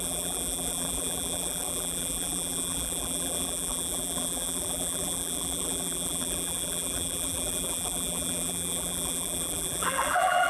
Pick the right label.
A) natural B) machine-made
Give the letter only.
B